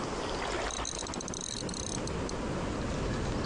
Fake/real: real